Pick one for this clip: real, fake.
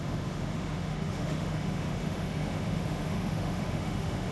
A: fake